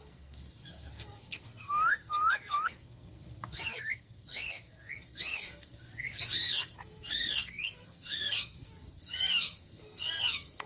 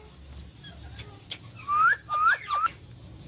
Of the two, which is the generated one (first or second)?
first